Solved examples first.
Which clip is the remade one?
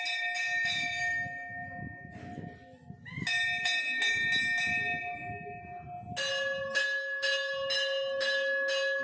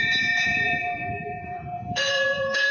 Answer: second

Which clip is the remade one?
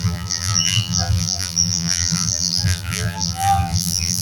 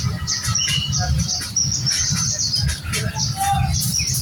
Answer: first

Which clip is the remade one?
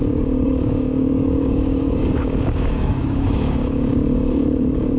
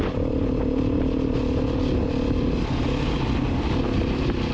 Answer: first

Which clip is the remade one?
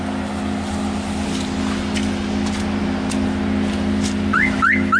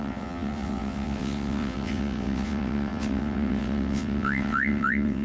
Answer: second